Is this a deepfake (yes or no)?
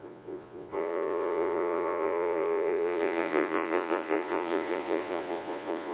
yes